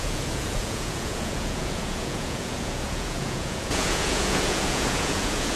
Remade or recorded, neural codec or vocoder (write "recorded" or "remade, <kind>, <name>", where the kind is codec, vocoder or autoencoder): remade, vocoder, Vocos